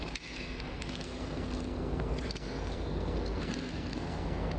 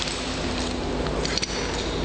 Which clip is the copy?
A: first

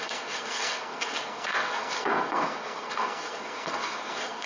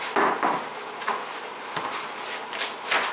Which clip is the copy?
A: first